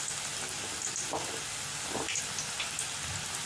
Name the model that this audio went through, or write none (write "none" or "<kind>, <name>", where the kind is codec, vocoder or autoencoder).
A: none